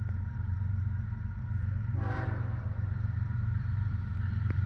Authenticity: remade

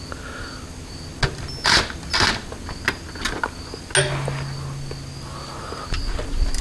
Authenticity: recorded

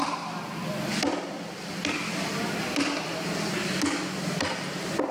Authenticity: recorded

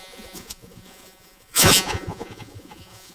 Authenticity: remade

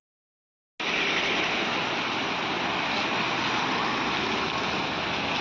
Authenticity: recorded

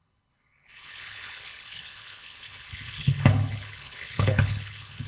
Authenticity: remade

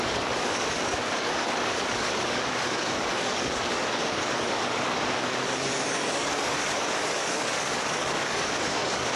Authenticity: remade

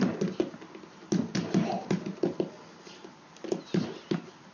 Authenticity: recorded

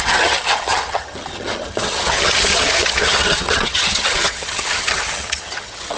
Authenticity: remade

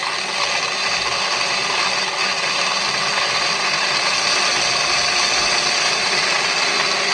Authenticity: recorded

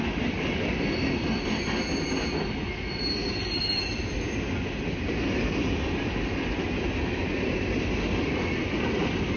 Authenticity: recorded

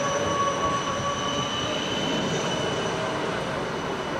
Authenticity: recorded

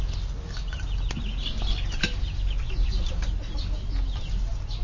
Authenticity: recorded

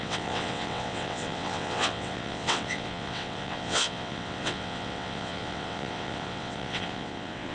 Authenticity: remade